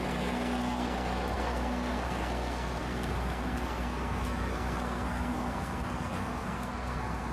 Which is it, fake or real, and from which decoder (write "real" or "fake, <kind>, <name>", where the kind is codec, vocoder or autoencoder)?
fake, codec, SNAC